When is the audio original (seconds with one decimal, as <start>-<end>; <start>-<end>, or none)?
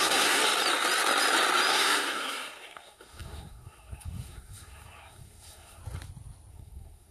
0.4-1.7; 5.8-6.5